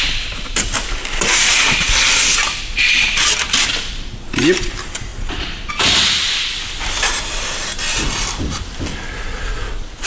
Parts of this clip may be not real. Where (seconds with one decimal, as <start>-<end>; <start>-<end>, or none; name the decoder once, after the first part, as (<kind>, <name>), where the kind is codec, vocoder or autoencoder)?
none